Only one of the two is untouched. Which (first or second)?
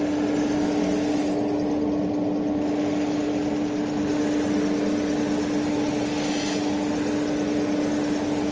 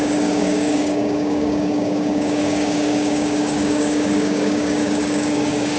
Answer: first